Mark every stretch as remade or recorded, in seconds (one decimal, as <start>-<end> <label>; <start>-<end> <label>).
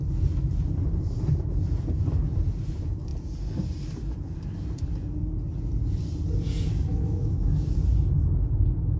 0.0-6.9 recorded; 6.9-7.9 remade; 7.9-9.0 recorded